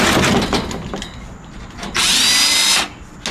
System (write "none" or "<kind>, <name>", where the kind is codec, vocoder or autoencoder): none